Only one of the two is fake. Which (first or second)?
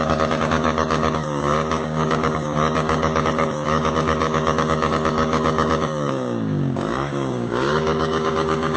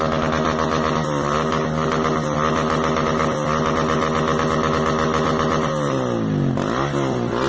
first